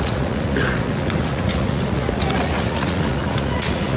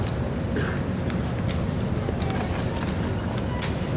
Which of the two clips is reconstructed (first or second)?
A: first